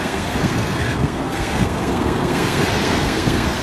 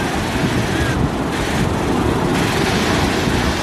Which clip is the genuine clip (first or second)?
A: second